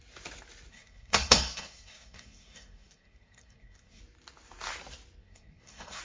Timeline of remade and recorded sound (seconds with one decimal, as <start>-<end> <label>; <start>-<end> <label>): 0.0-0.7 recorded; 0.7-4.0 remade; 4.0-5.2 recorded; 5.2-6.0 remade